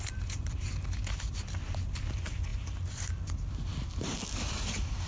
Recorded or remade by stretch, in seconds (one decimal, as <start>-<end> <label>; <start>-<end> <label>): 0.0-5.1 recorded